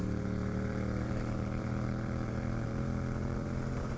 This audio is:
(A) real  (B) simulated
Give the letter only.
B